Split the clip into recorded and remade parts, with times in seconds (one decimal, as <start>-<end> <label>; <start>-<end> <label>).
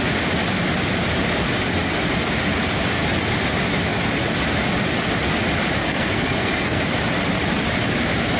0.0-5.8 recorded; 5.8-6.8 remade; 6.8-8.4 recorded